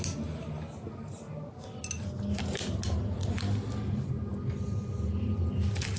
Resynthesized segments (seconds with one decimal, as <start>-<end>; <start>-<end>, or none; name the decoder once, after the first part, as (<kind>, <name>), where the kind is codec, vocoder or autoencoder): none